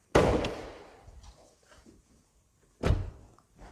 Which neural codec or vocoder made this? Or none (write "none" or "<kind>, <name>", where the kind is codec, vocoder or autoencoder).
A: none